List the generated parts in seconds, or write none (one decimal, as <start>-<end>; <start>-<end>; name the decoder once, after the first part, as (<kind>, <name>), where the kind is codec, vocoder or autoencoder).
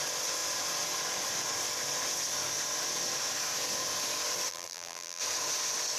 4.5-5.2 (vocoder, BigVGAN v2)